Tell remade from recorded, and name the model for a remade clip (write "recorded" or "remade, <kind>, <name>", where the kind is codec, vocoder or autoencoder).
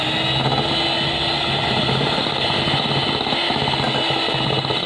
recorded